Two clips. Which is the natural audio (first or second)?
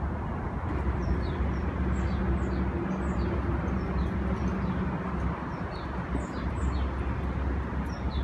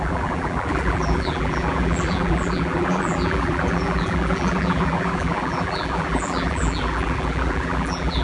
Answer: first